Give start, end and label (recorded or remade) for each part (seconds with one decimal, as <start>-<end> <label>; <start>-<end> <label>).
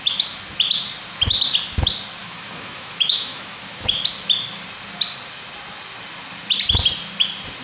0.0-2.2 recorded; 2.2-3.9 remade; 3.9-7.6 recorded